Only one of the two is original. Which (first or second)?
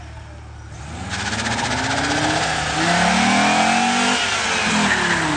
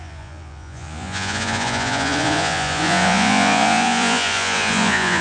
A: first